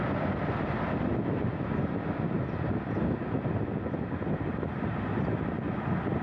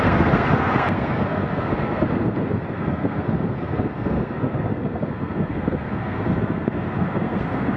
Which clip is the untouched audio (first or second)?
first